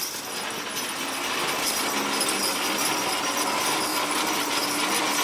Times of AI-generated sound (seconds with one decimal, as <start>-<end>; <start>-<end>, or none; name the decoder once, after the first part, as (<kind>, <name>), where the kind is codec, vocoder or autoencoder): 3.9-4.6 (vocoder, BigVGAN v2)